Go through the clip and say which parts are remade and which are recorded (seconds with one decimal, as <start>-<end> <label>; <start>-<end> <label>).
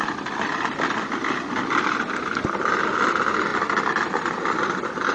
0.0-5.1 recorded